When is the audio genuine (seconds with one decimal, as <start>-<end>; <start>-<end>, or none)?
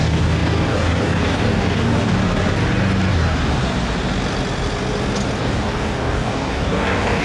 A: 2.2-3.1; 3.6-5.4